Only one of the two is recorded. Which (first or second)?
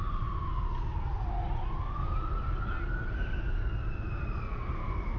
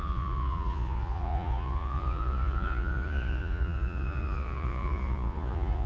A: first